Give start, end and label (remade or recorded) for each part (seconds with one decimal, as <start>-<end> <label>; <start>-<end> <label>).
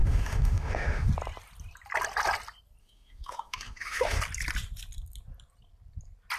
0.0-1.1 remade; 1.1-2.8 recorded; 2.8-4.2 remade; 4.2-6.4 recorded